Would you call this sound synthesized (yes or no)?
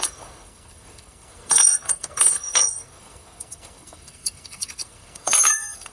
yes